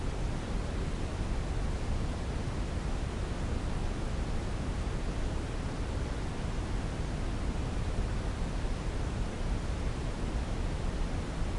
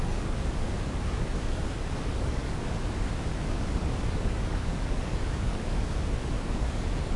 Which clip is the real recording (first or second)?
first